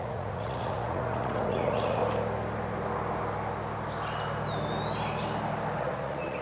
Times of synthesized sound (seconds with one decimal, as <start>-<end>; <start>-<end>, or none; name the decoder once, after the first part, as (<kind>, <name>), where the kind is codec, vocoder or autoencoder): 0.0-2.0 (vocoder, Vocos); 5.8-6.4